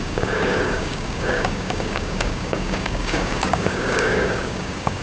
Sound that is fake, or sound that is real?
fake